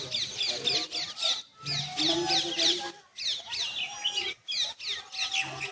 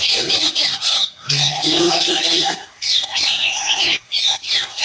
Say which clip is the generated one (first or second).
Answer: second